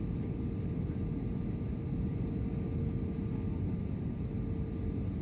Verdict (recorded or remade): recorded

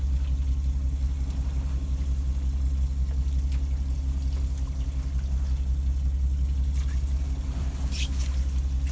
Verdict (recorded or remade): recorded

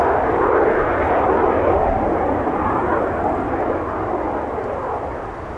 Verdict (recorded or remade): recorded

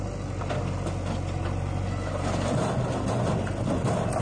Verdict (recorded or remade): recorded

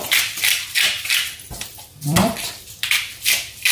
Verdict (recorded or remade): remade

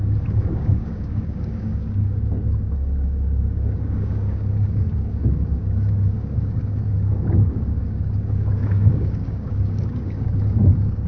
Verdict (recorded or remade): remade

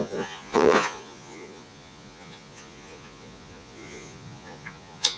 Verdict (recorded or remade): remade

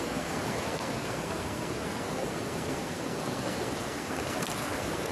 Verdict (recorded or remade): remade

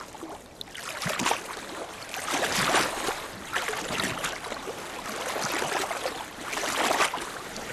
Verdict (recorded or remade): recorded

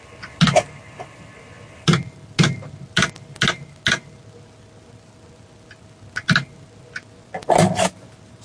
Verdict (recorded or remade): recorded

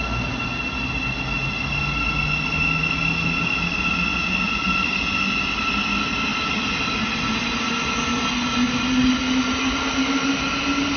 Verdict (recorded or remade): recorded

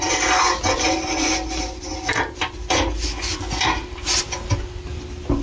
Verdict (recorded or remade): recorded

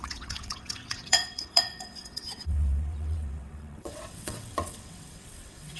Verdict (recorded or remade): remade